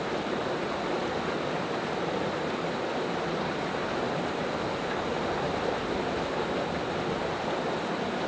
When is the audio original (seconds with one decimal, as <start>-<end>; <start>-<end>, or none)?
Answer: 0.0-8.3